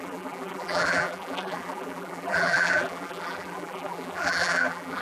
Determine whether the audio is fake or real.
fake